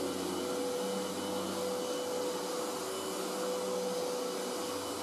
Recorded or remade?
recorded